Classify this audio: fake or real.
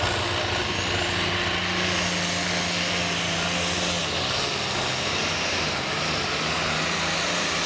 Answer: real